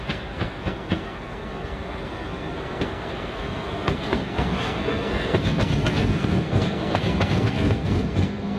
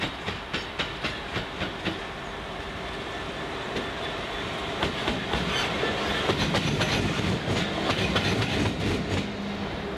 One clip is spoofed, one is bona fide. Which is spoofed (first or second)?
first